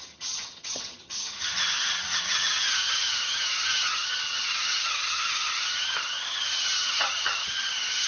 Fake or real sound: fake